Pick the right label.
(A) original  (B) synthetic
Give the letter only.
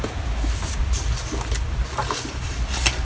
A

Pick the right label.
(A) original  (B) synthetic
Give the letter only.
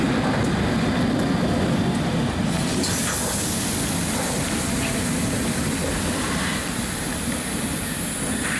A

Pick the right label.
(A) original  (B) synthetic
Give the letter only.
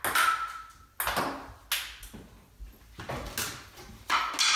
A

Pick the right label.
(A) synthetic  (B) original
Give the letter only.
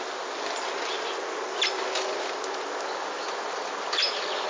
B